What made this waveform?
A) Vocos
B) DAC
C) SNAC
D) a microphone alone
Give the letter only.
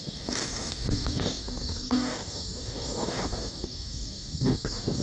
B